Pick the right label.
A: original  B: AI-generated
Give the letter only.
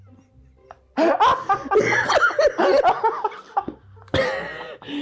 A